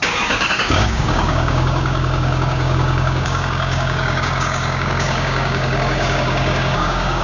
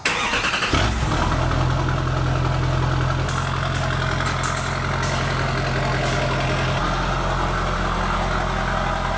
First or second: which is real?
second